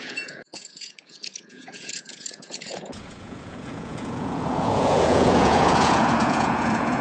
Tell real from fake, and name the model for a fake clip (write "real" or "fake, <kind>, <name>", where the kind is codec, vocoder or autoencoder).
fake, vocoder, Vocos